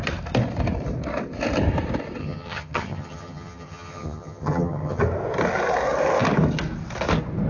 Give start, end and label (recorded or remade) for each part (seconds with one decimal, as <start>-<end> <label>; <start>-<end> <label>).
0.0-2.2 recorded; 2.2-5.0 remade; 5.0-7.5 recorded

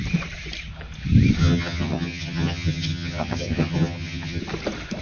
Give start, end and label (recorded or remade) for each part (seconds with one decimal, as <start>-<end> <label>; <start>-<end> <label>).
0.0-1.4 recorded; 1.4-4.4 remade; 4.4-5.0 recorded

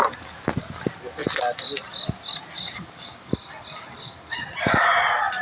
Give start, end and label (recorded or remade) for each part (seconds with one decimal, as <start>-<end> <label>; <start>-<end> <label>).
0.0-5.4 recorded

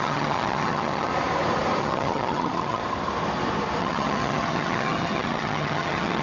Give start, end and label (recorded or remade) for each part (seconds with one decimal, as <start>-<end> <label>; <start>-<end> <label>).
0.0-1.1 remade; 1.1-1.8 recorded; 1.8-2.8 remade; 2.8-3.8 recorded; 3.8-6.2 remade

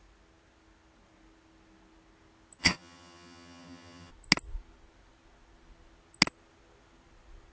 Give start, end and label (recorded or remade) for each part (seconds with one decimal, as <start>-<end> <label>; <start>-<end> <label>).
0.0-2.6 recorded; 2.6-4.1 remade; 4.1-7.5 recorded

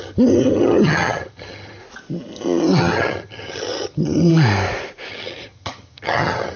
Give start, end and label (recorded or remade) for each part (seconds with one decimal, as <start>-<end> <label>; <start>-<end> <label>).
0.0-1.8 remade; 1.8-2.8 recorded; 2.8-4.3 remade; 4.3-5.1 recorded; 5.1-6.6 remade